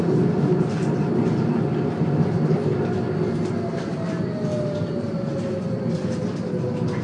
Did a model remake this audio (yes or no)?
no